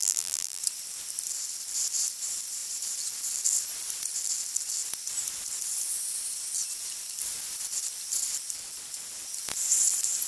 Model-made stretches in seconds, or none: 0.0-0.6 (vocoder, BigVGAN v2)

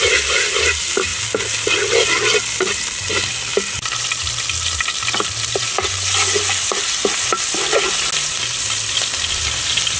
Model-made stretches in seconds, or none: none

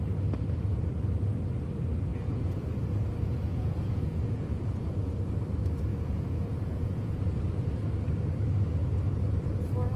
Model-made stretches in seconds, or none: 2.1-3.1 (vocoder, Vocos); 3.5-5.1; 5.9-7.2

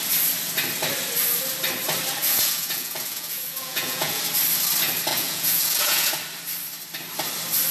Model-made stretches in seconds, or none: 2.2-4.2 (vocoder, Vocos); 5.1-6.1

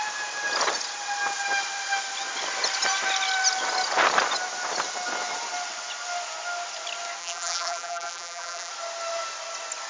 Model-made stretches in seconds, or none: 7.2-8.7 (vocoder, BigVGAN v2)

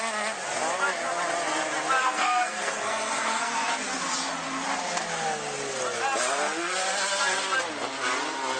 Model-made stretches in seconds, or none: 2.0-3.7 (codec, SNAC)